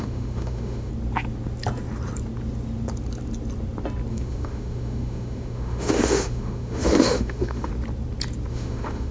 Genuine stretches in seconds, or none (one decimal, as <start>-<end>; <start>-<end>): 0.9-4.1; 7.7-8.5